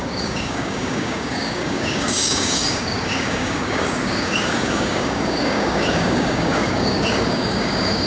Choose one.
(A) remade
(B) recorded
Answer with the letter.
A